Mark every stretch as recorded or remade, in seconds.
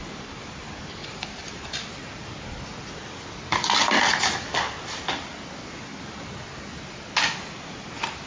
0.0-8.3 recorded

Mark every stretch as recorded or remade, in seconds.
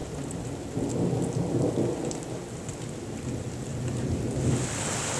0.0-5.2 recorded